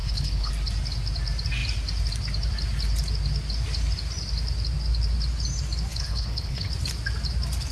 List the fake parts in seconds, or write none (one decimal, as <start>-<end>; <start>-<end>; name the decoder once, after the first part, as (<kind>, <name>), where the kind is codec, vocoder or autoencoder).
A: 0.0-0.5 (codec, HILCodec); 5.9-6.7